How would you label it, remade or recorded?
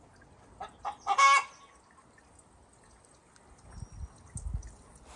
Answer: recorded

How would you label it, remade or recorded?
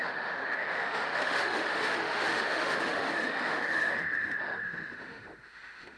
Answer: remade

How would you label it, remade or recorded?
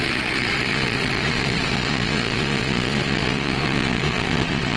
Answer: remade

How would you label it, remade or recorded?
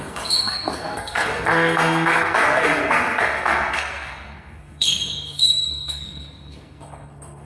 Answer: remade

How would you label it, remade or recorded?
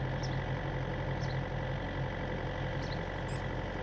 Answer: recorded